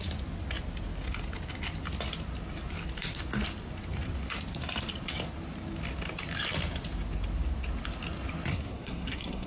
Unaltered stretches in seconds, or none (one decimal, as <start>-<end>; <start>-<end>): 0.0-8.5